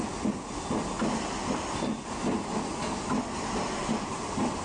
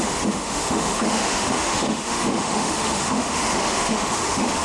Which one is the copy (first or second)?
second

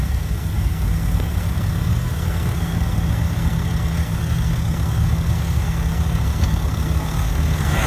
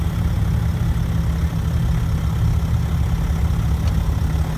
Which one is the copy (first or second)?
first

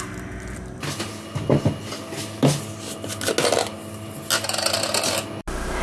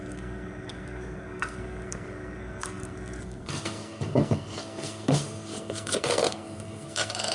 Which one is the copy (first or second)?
second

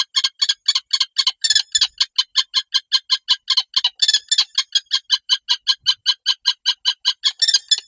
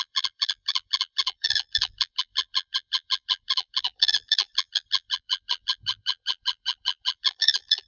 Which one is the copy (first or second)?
second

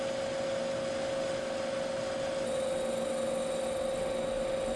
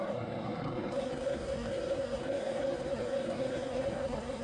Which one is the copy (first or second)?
second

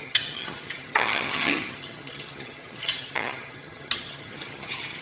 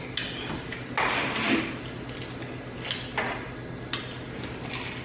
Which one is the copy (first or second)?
first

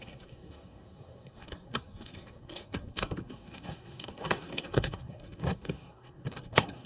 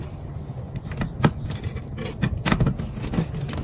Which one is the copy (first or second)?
first